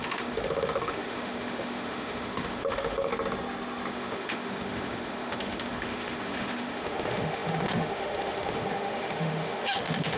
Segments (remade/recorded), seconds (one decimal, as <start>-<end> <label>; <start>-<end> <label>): 0.0-3.1 remade; 3.1-3.9 recorded; 3.9-10.2 remade